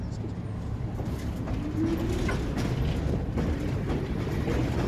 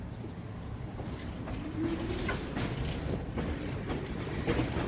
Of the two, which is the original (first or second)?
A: first